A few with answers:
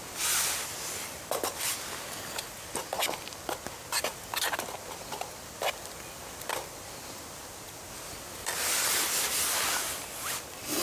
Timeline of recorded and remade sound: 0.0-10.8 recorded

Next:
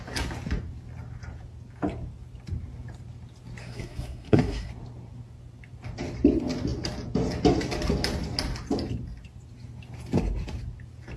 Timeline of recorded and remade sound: 0.0-3.6 recorded; 3.6-4.7 remade; 4.7-11.2 recorded

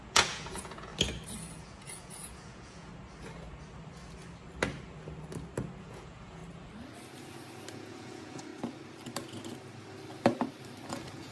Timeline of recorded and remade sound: 0.0-0.9 remade; 0.9-1.5 recorded; 1.5-2.9 remade; 2.9-5.8 recorded; 5.8-6.4 remade; 6.4-7.7 recorded; 7.7-8.5 remade; 8.5-10.9 recorded; 10.9-11.3 remade

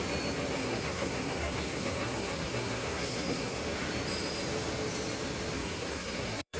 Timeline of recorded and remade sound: 0.0-0.6 recorded; 0.6-3.6 remade; 3.6-5.6 recorded; 5.6-6.6 remade

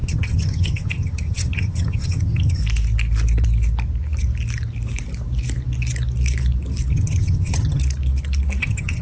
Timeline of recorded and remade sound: 0.0-2.6 remade; 2.6-6.9 recorded; 6.9-7.8 remade; 7.8-8.6 recorded; 8.6-9.0 remade

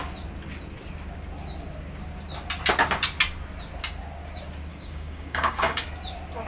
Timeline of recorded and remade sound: 0.0-4.7 recorded; 4.7-5.9 remade; 5.9-6.5 recorded

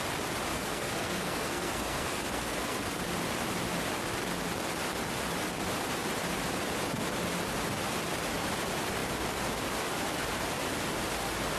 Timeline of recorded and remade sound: 0.0-0.5 recorded; 0.5-3.1 remade; 3.1-11.6 recorded

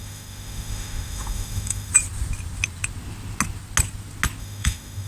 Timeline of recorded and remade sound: 0.0-1.9 remade; 1.9-4.4 recorded; 4.4-5.1 remade